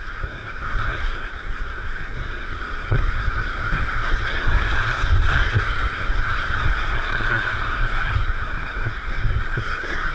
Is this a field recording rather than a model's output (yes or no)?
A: no